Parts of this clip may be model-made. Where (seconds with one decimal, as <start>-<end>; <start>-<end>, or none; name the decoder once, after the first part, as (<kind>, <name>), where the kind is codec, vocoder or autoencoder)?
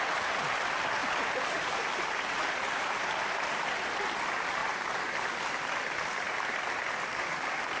none